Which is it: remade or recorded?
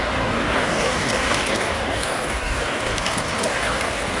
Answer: remade